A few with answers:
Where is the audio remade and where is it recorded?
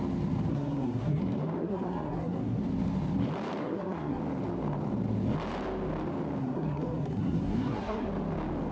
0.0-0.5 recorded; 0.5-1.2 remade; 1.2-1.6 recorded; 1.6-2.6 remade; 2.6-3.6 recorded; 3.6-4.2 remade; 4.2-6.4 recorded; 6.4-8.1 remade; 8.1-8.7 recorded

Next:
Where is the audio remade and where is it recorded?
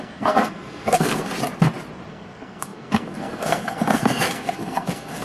0.0-1.3 remade; 1.3-2.1 recorded; 2.1-5.2 remade